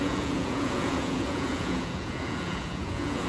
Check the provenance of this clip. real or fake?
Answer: fake